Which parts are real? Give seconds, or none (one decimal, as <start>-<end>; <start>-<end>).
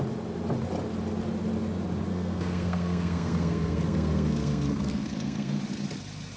0.0-2.1; 5.6-6.4